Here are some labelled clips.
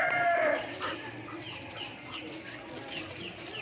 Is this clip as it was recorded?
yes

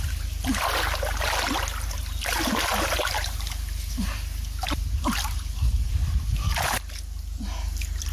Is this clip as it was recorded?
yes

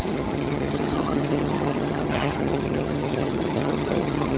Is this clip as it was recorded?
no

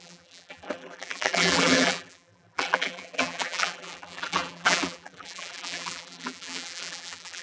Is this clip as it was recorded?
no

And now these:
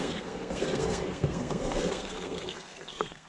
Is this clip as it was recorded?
no